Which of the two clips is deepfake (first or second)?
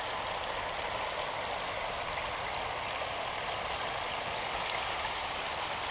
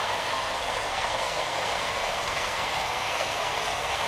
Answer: second